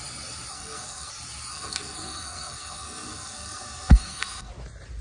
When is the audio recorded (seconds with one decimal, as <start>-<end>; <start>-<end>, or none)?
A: 0.0-0.5; 1.1-1.5; 4.5-5.0